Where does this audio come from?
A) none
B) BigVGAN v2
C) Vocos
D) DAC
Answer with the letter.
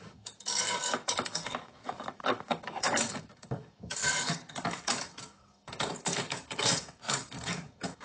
D